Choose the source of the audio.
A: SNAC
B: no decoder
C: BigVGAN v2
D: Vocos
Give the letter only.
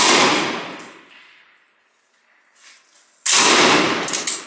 B